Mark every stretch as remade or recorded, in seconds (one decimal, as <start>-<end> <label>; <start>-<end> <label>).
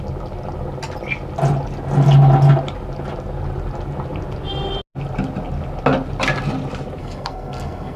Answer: 0.0-7.0 recorded; 7.0-8.0 remade